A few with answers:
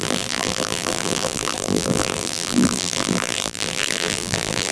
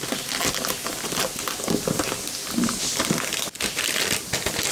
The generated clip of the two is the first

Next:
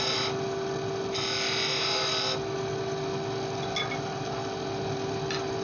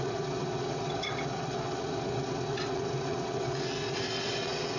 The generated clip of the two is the second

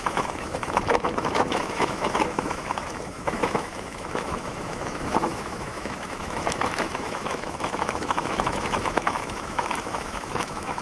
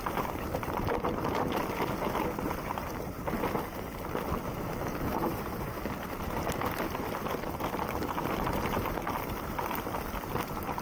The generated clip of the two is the first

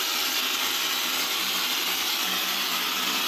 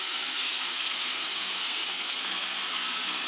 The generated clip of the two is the second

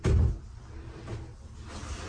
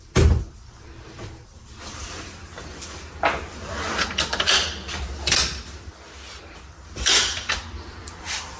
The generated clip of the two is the second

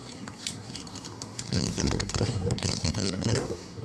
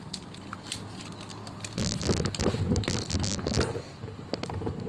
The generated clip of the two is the first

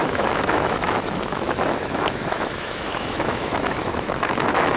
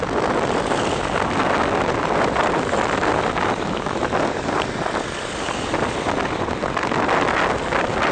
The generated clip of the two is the first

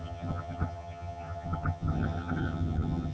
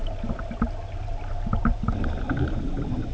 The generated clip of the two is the first